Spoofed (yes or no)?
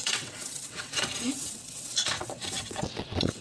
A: yes